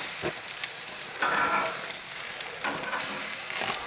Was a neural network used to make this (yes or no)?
no